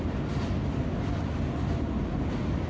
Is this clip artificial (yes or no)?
no